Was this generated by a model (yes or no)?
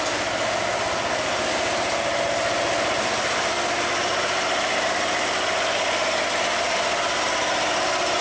no